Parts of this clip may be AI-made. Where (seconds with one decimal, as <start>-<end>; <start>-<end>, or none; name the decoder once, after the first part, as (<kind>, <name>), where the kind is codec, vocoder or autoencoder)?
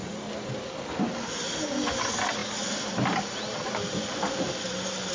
none